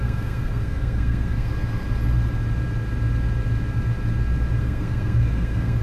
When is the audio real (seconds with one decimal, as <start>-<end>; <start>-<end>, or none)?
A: 1.5-4.6